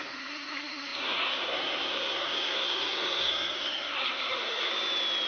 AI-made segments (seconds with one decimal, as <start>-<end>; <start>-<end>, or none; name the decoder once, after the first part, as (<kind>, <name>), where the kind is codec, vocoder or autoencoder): 0.0-4.7 (codec, SNAC)

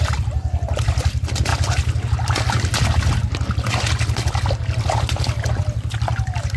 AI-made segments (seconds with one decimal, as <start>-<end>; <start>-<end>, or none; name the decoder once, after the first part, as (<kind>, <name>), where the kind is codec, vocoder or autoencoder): 0.0-1.5 (vocoder, BigVGAN v2); 5.5-6.6